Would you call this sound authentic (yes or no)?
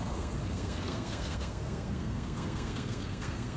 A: no